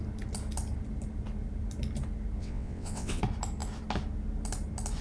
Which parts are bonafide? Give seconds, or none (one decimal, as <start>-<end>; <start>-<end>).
0.0-2.4; 3.2-5.0